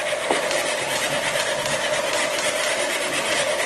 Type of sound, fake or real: real